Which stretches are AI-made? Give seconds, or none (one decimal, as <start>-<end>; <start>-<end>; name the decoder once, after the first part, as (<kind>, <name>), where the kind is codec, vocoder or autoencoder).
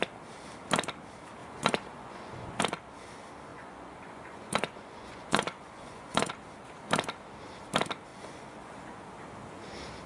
1.4-2.6 (vocoder, Vocos); 3.5-6.3; 8.1-9.0